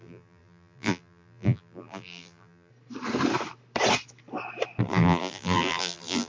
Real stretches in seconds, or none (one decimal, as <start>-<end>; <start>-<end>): 2.7-4.8